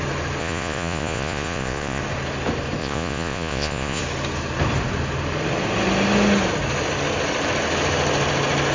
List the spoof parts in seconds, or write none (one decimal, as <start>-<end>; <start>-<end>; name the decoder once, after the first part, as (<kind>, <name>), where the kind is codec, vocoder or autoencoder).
0.4-2.0 (vocoder, Vocos); 2.8-4.0